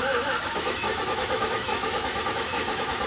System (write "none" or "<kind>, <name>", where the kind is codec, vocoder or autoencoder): autoencoder, DAC-VAE